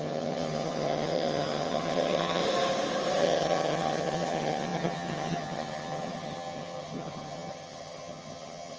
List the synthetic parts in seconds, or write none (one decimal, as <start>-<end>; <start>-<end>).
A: 0.0-2.4; 3.2-8.8